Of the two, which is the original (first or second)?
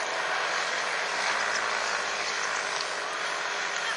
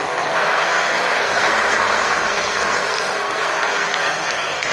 first